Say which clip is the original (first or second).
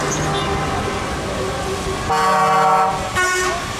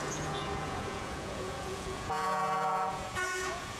first